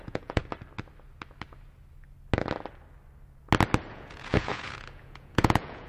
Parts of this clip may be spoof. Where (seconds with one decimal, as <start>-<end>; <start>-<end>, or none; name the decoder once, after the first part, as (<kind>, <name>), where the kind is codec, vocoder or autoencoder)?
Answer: 0.0-0.4 (vocoder, Vocos); 3.9-5.9